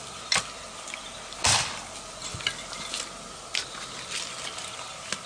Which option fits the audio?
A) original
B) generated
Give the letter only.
A